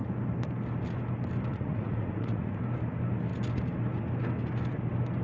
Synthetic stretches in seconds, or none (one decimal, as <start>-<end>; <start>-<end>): 1.5-2.6